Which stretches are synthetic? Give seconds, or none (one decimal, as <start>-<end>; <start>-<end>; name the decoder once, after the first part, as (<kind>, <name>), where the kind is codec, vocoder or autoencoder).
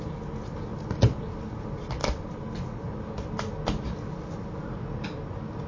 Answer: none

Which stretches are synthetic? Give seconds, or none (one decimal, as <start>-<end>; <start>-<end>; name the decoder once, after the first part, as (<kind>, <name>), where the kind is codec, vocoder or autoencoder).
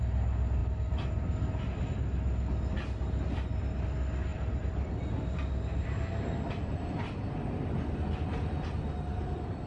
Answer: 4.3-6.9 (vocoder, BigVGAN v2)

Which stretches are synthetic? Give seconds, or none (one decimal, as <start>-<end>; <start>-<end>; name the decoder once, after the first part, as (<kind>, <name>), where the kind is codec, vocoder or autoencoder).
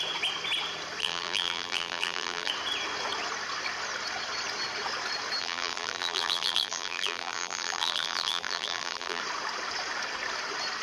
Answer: 1.0-2.5 (vocoder, BigVGAN v2); 5.4-9.2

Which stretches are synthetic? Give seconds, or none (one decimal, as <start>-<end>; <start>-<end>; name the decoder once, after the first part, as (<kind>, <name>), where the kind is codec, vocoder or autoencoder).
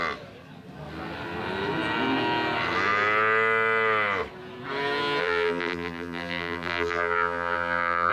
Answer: 5.2-8.1 (vocoder, BigVGAN v2)